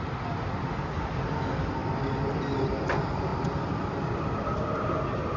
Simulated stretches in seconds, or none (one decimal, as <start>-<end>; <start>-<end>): none